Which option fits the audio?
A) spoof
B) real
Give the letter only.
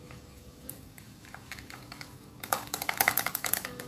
A